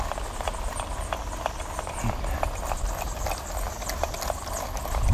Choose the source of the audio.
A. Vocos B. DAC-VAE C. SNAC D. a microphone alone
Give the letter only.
D